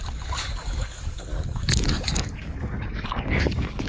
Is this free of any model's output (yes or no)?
no